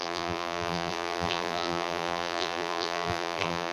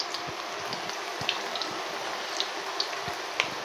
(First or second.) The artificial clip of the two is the first